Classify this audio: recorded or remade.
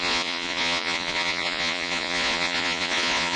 remade